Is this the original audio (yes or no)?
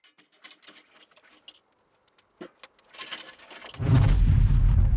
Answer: yes